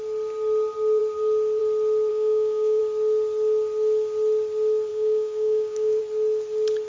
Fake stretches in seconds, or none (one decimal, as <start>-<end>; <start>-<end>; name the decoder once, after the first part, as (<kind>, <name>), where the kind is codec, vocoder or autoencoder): 2.1-2.8 (codec, DAC); 4.9-6.0